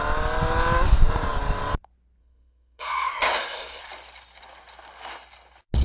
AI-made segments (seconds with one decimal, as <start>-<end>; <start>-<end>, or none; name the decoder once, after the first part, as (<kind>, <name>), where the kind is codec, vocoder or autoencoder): 2.2-3.8 (codec, SNAC)